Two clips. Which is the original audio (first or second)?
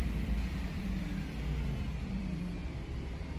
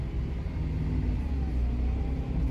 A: second